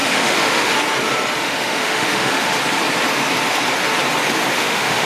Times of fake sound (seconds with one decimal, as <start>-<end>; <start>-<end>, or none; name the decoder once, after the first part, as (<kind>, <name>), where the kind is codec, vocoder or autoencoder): 0.0-0.7 (autoencoder, DAC-VAE); 1.4-2.5; 4.5-5.1